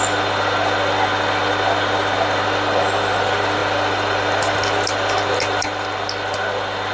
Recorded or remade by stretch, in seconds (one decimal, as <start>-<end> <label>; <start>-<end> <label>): 0.0-6.9 recorded